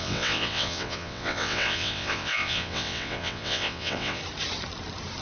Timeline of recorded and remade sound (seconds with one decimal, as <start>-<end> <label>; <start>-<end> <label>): 0.0-4.2 remade; 4.2-5.2 recorded